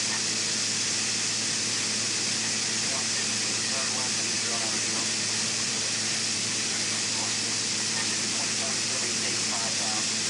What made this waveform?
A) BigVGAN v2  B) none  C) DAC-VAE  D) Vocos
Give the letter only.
B